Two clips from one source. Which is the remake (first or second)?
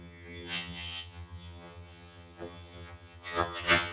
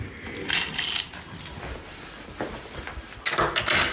first